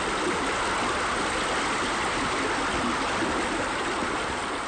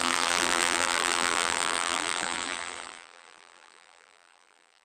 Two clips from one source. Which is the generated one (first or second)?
second